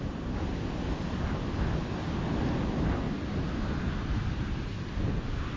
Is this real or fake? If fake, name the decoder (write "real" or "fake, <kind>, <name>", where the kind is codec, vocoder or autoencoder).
real